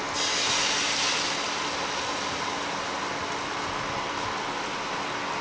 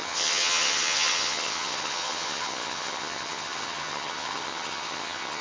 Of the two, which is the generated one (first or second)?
second